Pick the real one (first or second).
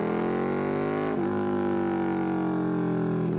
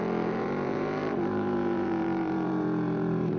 first